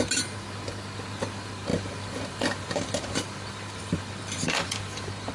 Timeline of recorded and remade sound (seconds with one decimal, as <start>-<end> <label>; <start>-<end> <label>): 0.0-1.7 recorded; 1.7-5.3 remade